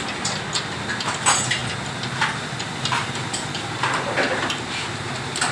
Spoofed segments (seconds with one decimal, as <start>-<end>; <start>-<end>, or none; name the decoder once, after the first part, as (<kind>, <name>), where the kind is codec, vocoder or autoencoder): none